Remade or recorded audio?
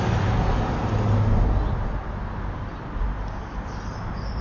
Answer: recorded